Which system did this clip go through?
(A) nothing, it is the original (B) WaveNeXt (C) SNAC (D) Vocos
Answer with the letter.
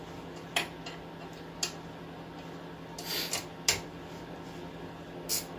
A